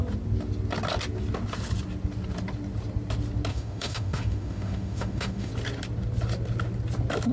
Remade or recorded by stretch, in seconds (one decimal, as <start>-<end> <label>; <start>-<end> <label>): 0.0-3.5 recorded; 3.5-5.5 remade; 5.5-7.3 recorded